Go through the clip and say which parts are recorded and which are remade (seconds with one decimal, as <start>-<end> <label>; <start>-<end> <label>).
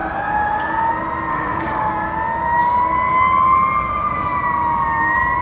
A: 0.0-1.3 recorded; 1.3-1.9 remade; 1.9-5.4 recorded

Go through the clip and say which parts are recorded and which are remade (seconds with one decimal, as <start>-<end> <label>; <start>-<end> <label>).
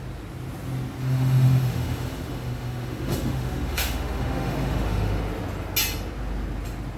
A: 0.0-1.0 recorded; 1.0-5.2 remade; 5.2-7.0 recorded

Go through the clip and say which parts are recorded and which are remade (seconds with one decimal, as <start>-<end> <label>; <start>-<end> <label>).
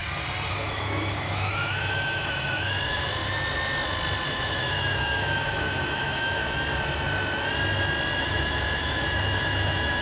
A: 0.0-0.5 recorded; 0.5-3.2 remade; 3.2-4.3 recorded; 4.3-6.4 remade; 6.4-8.2 recorded; 8.2-10.0 remade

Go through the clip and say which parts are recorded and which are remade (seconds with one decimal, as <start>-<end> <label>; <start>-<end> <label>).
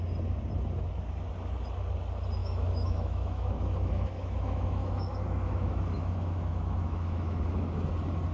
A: 0.0-2.4 recorded; 2.4-7.4 remade; 7.4-8.3 recorded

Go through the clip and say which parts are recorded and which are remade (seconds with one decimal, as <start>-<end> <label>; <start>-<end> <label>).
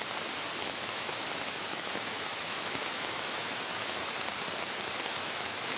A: 0.0-0.6 recorded; 0.6-4.1 remade; 4.1-5.1 recorded; 5.1-5.8 remade